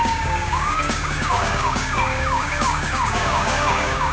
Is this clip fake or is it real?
fake